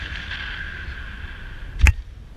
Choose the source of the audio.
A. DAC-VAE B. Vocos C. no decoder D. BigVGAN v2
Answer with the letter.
C